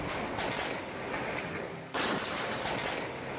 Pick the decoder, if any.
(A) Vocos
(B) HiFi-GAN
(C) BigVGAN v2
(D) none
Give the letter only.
D